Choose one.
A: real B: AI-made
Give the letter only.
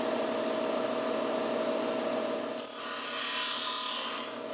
A